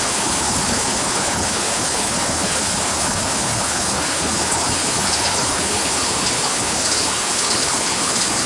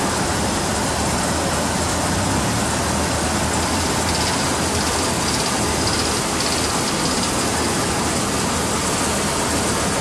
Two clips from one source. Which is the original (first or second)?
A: second